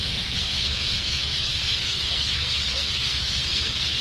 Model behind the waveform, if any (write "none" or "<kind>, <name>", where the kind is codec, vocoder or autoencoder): codec, SNAC